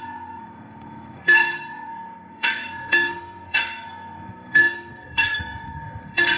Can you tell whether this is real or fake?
fake